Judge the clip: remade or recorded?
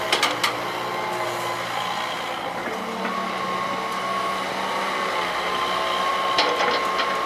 recorded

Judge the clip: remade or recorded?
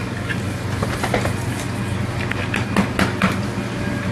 recorded